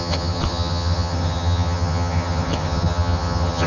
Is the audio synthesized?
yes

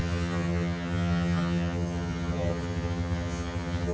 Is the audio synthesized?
yes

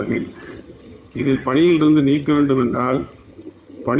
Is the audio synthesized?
yes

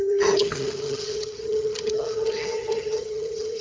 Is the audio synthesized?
yes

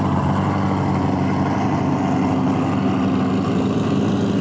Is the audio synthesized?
no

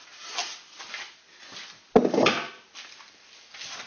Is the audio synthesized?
no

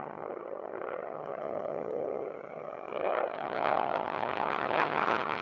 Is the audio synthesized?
yes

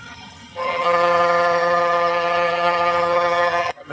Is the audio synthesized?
yes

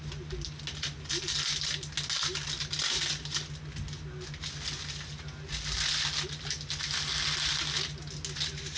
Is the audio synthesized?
no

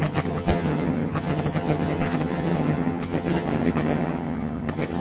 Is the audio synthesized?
yes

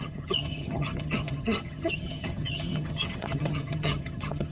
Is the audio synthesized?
yes